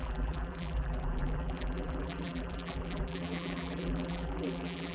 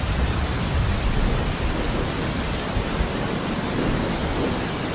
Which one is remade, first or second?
first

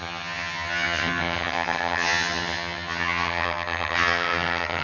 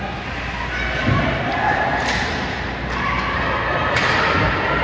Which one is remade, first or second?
first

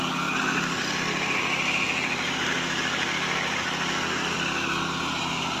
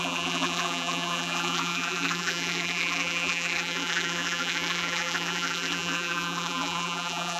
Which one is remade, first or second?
second